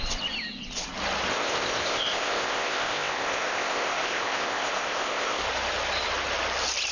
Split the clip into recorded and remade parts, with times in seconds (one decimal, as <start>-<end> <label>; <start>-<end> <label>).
0.0-1.3 recorded; 1.3-5.4 remade; 5.4-6.9 recorded